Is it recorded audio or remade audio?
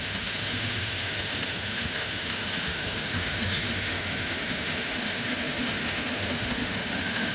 remade